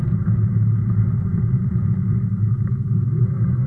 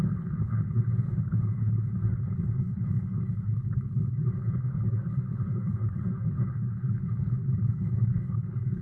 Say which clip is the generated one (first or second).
second